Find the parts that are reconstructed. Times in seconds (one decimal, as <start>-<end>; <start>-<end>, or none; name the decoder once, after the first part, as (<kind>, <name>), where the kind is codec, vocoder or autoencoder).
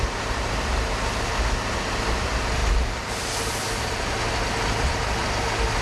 2.6-4.2 (vocoder, BigVGAN v2)